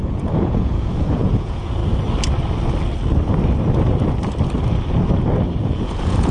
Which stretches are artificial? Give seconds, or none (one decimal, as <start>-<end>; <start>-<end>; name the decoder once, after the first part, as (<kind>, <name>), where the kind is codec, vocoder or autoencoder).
0.0-1.8 (vocoder, Vocos); 5.6-6.3